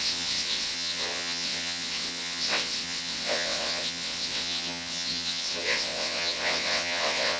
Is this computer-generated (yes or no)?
yes